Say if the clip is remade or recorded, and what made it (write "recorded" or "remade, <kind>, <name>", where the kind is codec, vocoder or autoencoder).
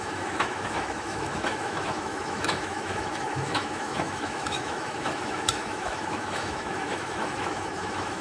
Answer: remade, autoencoder, DAC-VAE